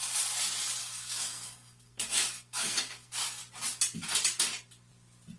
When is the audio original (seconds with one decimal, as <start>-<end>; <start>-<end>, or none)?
0.0-0.8; 3.4-5.4